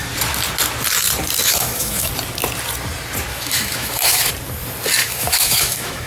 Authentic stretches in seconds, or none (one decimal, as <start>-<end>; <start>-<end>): 0.0-1.4; 2.1-3.3; 4.3-5.0

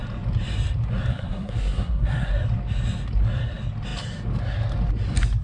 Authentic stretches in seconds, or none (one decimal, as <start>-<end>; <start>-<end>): 0.0-1.1; 2.3-5.4

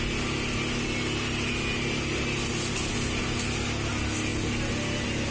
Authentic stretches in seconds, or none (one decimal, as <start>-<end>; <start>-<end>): 0.0-5.3

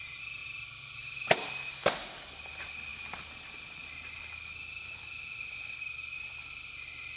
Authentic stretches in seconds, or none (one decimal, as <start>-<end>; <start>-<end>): 0.0-7.2

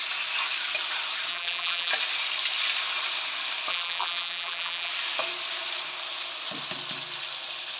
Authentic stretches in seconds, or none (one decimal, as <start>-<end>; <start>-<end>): 0.0-1.3; 1.9-3.7; 4.9-7.8